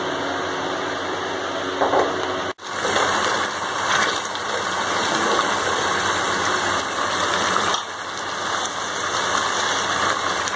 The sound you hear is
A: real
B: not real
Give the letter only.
A